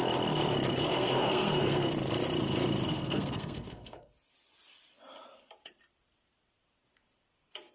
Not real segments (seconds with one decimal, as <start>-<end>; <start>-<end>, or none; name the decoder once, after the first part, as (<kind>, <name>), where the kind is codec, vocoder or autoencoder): 0.7-1.9 (codec, SNAC); 2.9-4.1